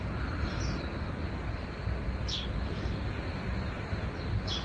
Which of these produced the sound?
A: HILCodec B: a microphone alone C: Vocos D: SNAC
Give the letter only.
B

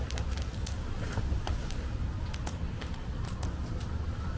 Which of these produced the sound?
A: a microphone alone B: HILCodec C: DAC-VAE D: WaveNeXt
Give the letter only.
A